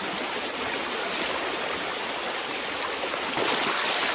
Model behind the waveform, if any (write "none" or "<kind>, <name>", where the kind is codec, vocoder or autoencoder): none